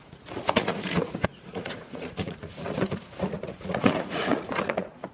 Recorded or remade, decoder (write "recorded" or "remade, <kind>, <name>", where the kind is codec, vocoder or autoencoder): remade, vocoder, Vocos